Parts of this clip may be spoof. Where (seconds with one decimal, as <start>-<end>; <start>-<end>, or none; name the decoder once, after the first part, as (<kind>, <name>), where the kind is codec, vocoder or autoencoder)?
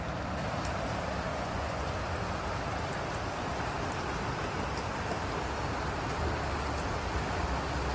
1.3-1.9 (vocoder, Vocos)